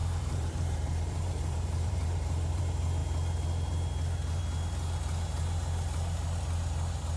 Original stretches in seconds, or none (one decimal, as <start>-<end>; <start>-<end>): 2.6-7.2